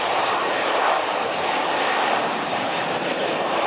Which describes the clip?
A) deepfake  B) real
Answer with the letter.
A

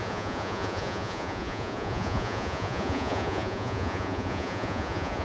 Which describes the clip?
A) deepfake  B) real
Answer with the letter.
A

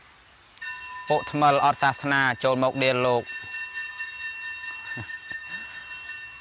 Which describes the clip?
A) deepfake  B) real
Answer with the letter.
B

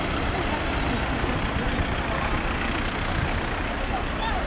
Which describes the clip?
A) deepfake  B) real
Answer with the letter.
B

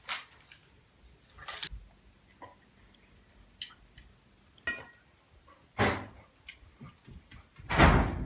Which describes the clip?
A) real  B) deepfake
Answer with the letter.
A